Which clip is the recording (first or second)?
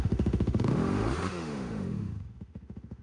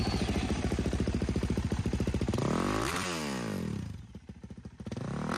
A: second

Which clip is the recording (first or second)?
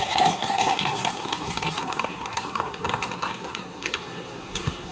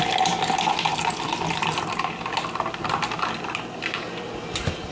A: second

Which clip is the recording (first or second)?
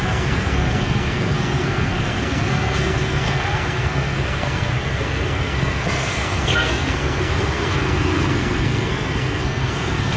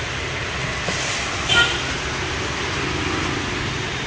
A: second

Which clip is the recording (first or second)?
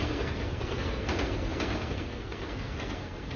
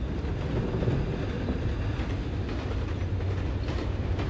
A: second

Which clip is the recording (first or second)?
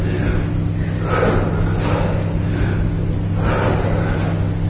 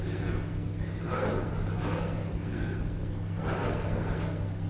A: first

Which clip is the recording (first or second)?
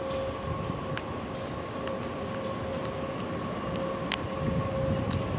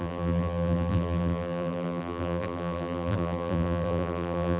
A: first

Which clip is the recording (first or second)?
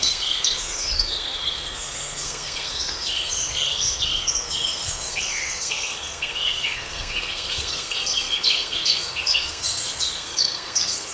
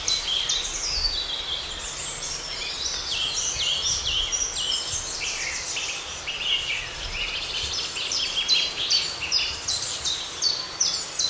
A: second